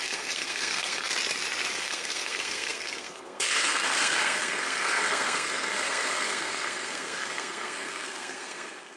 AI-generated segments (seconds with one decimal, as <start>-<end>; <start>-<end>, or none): 0.0-1.1; 1.7-9.0